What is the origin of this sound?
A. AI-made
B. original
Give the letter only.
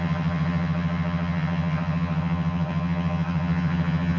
A